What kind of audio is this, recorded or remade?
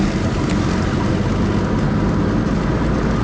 recorded